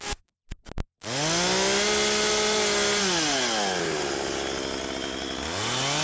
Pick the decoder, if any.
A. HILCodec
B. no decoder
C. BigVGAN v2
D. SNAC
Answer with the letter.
B